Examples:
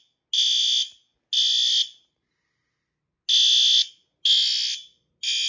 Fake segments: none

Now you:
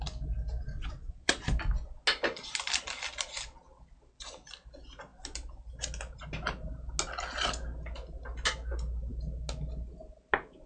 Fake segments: 0.7-1.4 (vocoder, WaveNeXt)

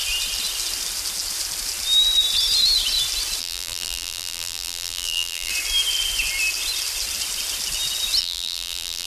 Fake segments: 3.4-5.5 (vocoder, BigVGAN v2); 8.2-9.1

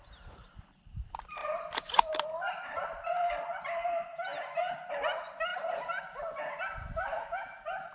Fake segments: 0.0-4.3 (vocoder, BigVGAN v2); 4.9-7.9

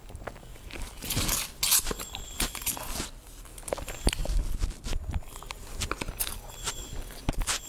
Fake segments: 0.5-1.5 (vocoder, BigVGAN v2); 4.2-5.5

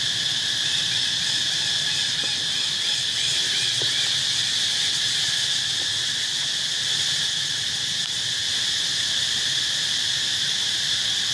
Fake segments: none

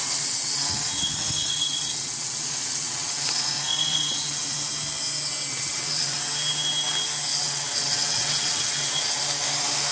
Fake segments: 0.0-4.7 (vocoder, WaveNeXt); 5.5-6.2; 7.3-9.2

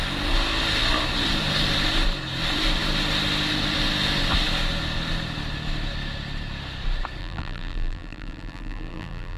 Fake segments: 7.2-9.4 (vocoder, BigVGAN v2)